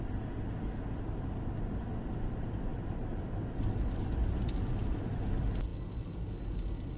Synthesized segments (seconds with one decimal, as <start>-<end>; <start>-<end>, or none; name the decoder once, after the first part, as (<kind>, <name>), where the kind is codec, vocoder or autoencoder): none

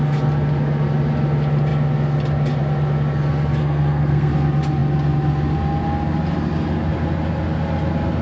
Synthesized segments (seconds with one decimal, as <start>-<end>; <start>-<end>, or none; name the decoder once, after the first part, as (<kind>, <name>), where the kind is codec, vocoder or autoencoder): 3.6-4.3 (codec, SNAC)

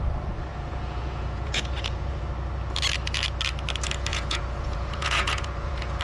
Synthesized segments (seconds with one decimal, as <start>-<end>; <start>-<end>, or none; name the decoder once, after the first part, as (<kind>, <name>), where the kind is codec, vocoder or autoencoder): 0.5-2.2 (vocoder, Vocos); 4.1-6.0

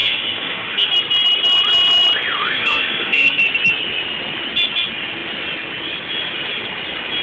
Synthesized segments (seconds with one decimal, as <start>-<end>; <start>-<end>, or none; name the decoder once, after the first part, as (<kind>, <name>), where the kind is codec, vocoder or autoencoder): 0.0-0.9 (autoencoder, DAC-VAE); 2.4-3.4

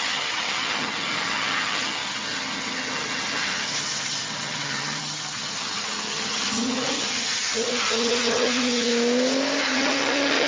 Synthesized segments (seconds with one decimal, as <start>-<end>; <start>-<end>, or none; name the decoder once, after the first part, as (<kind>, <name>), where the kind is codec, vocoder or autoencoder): 0.0-8.9 (vocoder, HiFi-GAN); 9.6-10.5

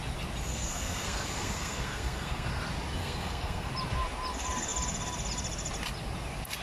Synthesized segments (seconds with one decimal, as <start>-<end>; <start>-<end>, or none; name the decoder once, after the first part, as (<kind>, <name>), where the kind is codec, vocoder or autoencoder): 0.5-2.5 (codec, SNAC); 3.0-3.7

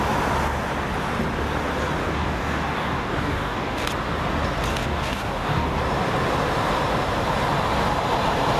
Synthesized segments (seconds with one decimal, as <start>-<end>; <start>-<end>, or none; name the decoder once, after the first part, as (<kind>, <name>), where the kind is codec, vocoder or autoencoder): 2.0-3.9 (codec, DAC); 4.7-5.8

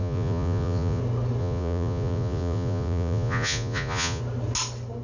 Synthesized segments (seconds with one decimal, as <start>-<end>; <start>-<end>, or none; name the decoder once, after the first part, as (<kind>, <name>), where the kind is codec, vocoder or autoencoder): 0.0-1.0 (vocoder, Vocos); 1.4-4.2